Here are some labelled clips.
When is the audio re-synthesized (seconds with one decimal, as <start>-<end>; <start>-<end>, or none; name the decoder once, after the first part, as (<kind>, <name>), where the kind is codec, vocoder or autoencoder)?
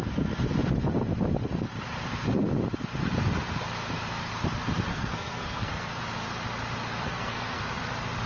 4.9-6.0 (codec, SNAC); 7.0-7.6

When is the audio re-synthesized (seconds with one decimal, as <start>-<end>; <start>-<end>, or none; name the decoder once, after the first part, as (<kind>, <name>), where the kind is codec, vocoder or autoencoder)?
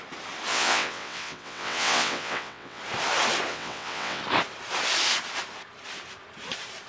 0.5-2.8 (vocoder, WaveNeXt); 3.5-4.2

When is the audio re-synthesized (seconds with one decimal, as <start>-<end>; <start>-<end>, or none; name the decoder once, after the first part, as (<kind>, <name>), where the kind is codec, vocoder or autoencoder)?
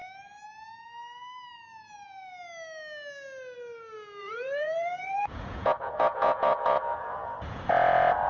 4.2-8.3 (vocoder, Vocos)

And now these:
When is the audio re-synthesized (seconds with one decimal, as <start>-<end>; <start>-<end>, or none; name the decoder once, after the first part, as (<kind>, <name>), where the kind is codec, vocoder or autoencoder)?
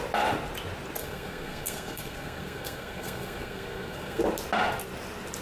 1.0-4.2 (codec, SNAC)